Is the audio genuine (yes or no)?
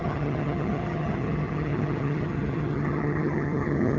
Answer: no